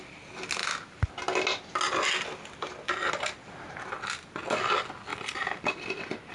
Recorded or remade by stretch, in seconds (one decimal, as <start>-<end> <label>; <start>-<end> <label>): 0.0-5.1 recorded; 5.1-5.8 remade; 5.8-6.3 recorded